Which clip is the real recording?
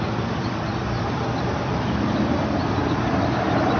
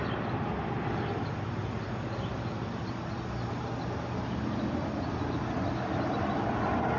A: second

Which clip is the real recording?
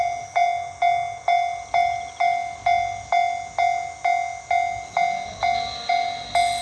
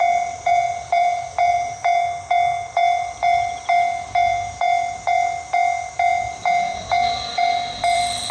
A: first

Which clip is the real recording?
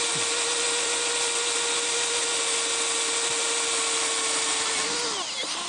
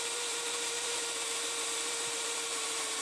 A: first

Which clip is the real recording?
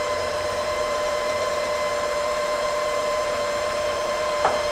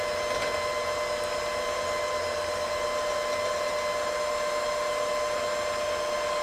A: second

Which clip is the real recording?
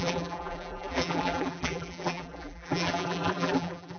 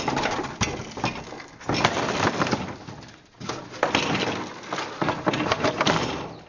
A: second